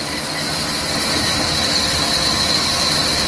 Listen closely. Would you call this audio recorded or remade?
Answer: recorded